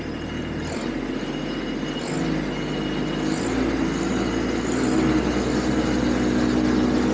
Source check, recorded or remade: recorded